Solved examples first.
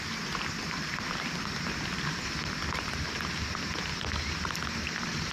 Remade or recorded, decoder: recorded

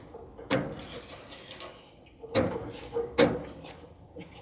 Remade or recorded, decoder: recorded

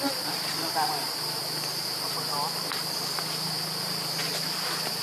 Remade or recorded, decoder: recorded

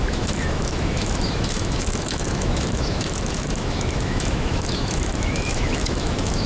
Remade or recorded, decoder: remade, autoencoder, DAC-VAE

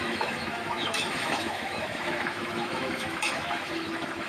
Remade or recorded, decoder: remade, autoencoder, DAC-VAE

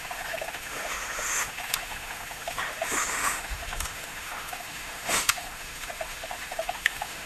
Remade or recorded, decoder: remade, autoencoder, DAC-VAE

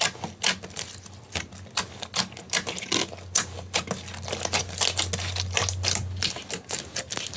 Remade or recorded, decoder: recorded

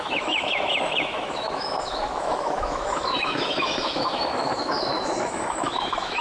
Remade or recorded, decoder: remade, autoencoder, DAC-VAE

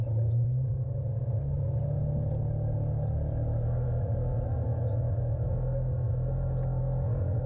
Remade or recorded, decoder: recorded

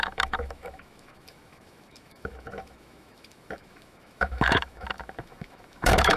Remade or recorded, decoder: remade, autoencoder, DAC-VAE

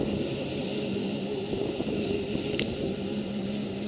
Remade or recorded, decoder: recorded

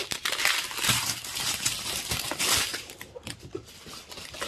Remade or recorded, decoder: recorded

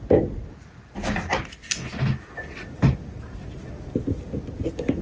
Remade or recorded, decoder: recorded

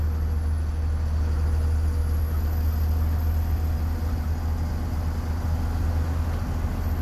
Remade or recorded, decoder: recorded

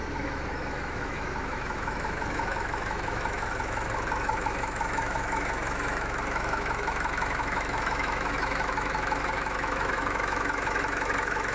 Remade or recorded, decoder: remade, autoencoder, DAC-VAE